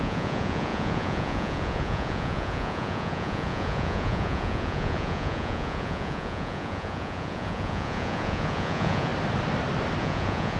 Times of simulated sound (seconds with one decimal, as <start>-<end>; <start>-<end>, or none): 0.0-9.1; 10.0-10.6